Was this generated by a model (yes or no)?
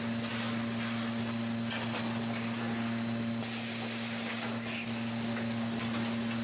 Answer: no